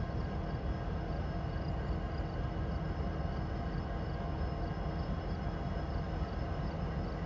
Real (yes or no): yes